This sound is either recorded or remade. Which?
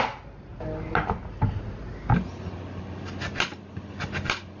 recorded